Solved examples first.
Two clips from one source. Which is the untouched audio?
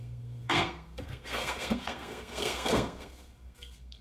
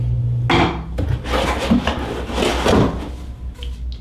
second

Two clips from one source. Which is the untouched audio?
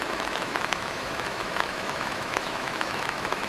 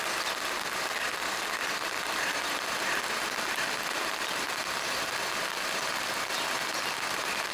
second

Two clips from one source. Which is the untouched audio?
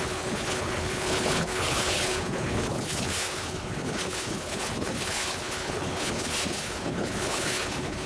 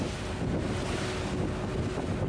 second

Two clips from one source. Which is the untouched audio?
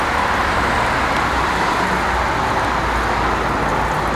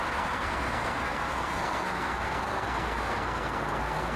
first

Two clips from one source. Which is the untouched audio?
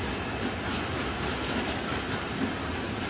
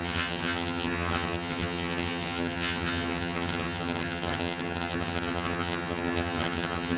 first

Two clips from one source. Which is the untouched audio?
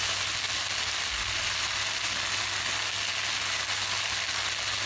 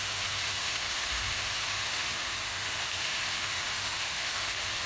first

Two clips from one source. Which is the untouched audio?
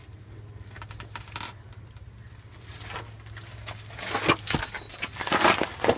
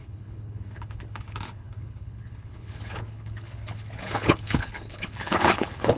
first